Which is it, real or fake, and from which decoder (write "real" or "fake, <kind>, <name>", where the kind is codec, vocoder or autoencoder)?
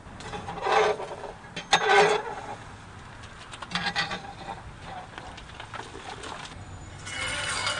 real